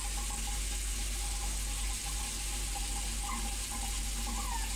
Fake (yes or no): no